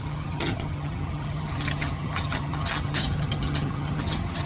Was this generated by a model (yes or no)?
yes